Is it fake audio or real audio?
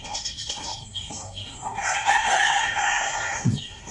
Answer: fake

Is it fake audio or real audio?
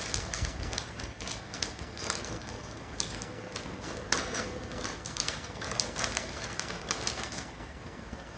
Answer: fake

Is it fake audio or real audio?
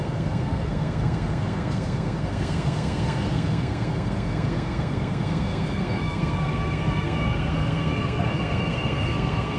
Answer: fake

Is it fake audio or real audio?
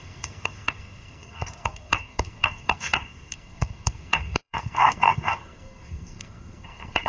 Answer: fake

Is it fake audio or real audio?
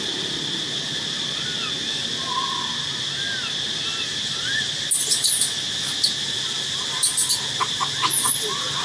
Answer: real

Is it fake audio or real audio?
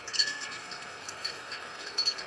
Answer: fake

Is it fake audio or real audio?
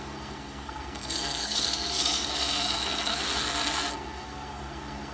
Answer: fake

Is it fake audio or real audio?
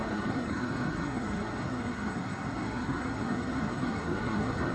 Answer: fake